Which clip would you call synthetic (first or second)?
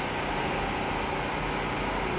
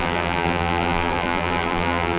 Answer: second